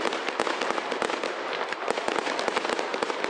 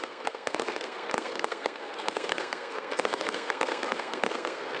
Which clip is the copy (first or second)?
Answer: second